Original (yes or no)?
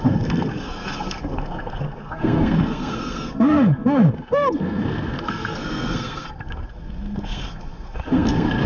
no